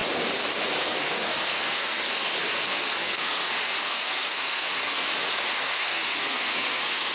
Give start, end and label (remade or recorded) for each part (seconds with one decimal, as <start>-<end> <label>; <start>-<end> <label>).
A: 0.0-0.8 recorded; 0.8-5.1 remade; 5.1-5.6 recorded; 5.6-7.1 remade